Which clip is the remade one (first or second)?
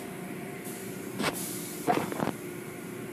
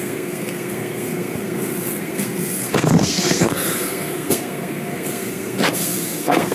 second